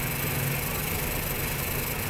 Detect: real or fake real